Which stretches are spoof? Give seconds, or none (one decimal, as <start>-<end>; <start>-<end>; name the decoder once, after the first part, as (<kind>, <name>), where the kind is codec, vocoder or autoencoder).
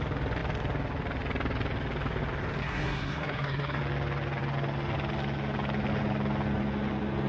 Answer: 2.6-3.8 (codec, SNAC)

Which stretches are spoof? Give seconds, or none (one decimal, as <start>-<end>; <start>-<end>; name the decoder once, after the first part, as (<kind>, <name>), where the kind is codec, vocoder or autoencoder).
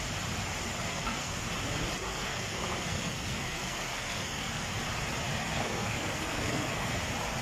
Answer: 0.9-1.4 (codec, SNAC); 2.1-4.7; 5.4-7.0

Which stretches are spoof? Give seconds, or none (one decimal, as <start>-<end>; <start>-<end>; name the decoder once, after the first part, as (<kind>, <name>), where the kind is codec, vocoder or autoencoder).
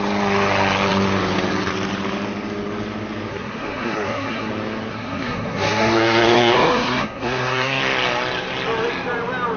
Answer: 3.3-4.5 (codec, SNAC); 4.9-7.8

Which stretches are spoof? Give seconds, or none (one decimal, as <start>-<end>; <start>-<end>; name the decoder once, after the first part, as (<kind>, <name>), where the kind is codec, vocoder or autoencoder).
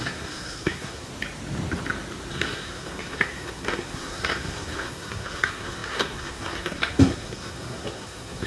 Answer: 0.0-1.1 (codec, SNAC); 2.3-8.5